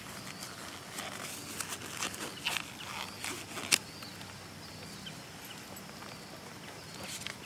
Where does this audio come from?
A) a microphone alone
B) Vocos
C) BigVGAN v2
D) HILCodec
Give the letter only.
A